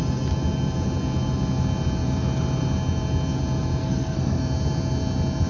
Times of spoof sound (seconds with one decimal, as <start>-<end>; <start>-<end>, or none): 3.8-4.4